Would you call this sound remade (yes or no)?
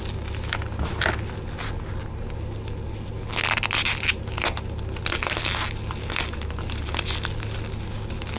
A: no